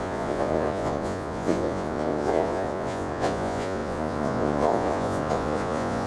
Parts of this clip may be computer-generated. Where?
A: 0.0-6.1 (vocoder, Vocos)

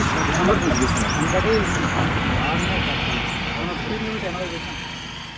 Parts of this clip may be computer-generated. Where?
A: 1.7-2.4 (codec, SNAC)

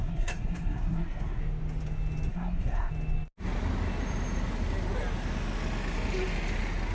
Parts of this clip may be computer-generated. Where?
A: 0.0-1.4 (codec, SNAC); 2.3-2.9

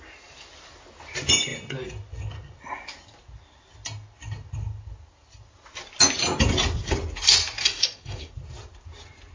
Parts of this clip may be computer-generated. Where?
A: 7.6-8.3 (codec, DAC)

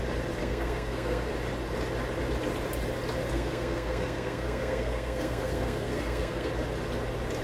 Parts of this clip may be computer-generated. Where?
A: 0.4-1.3 (codec, SNAC); 3.3-6.5

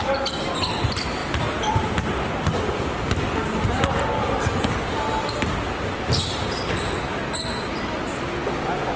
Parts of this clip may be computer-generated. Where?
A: none

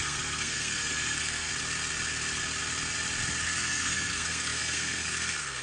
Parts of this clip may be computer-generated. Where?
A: 0.0-1.5 (codec, SNAC); 3.4-5.6

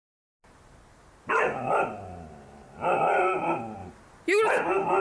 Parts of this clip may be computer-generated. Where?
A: none